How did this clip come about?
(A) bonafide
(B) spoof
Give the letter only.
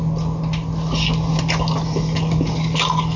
A